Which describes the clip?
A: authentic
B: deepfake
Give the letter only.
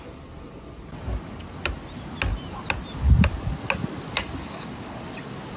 A